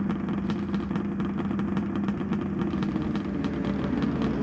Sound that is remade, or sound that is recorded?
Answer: recorded